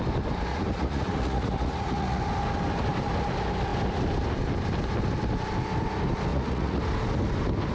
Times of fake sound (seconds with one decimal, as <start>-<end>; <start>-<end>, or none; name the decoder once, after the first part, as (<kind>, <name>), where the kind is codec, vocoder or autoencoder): 0.5-2.2 (vocoder, Vocos); 6.3-6.8